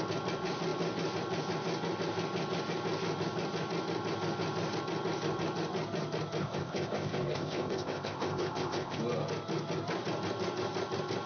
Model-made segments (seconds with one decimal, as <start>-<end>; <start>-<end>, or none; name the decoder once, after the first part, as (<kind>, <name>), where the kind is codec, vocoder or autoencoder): 6.4-9.0 (codec, ZipCodec)

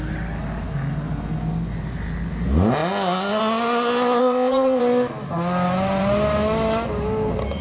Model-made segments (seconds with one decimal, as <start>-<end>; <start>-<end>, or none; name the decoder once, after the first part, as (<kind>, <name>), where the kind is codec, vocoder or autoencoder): 4.2-4.8 (codec, ZipCodec)

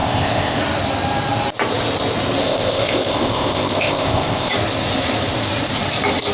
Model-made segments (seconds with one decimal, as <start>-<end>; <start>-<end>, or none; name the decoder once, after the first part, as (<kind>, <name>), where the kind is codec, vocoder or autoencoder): 0.0-0.6 (codec, ZipCodec); 2.4-4.5

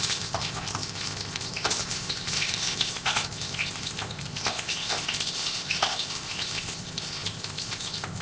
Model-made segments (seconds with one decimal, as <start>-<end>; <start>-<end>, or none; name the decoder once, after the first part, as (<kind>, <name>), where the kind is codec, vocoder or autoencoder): 0.0-8.2 (codec, ZipCodec)

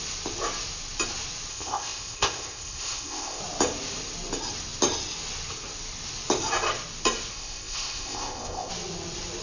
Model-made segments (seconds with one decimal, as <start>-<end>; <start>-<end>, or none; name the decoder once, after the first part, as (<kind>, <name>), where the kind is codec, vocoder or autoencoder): 1.5-3.4 (codec, ZipCodec); 7.3-8.7

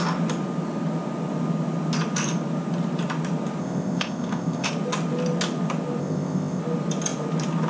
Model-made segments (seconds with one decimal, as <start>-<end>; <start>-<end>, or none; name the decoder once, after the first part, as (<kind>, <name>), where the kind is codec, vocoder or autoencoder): 3.6-4.7 (codec, ZipCodec); 6.0-6.6

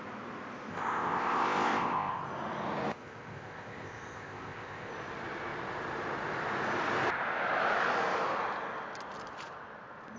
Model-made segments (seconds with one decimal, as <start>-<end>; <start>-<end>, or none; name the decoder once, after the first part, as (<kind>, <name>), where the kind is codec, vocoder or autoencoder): 0.7-2.2 (codec, ZipCodec); 2.9-4.9